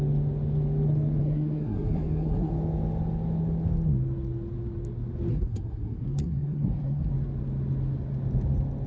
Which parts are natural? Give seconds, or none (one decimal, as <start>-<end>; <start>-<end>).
0.0-1.2; 2.5-5.3; 7.1-8.9